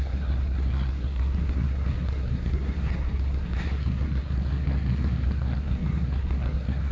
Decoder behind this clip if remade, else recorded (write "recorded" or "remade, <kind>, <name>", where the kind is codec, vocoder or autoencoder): remade, codec, SNAC